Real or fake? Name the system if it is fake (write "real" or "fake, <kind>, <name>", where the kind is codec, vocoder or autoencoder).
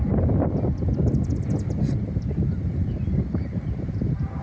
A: real